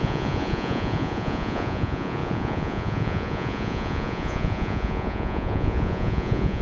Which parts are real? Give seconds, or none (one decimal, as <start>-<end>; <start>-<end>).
none